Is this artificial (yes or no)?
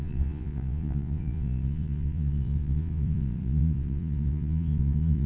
yes